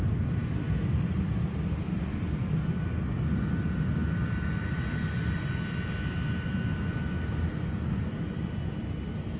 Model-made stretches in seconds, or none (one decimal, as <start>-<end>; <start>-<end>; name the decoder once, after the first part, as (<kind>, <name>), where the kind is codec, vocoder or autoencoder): none